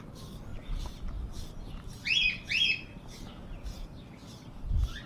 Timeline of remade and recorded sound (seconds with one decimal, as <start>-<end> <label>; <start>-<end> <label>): 0.0-0.5 recorded; 0.5-1.1 remade; 1.1-5.1 recorded